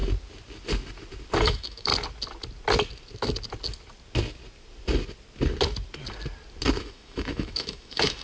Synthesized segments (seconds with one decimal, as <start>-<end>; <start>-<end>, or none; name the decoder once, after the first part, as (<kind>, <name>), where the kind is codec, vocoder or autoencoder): 1.4-1.9 (autoencoder, DAC-VAE); 6.8-8.2